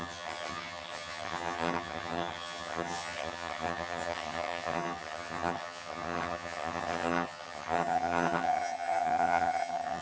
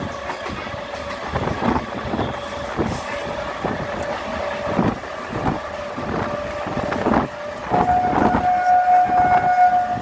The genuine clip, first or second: second